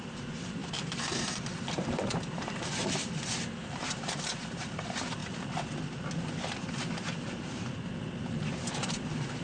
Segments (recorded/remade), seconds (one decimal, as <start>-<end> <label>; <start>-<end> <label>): 0.0-5.2 remade; 5.2-8.7 recorded; 8.7-9.4 remade